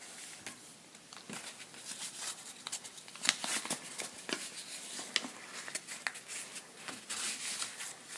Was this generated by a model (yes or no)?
no